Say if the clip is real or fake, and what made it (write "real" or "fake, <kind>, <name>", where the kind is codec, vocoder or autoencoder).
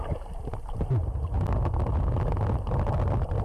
real